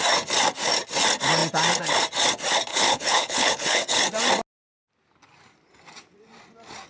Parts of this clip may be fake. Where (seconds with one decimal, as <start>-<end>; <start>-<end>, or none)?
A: 2.7-4.0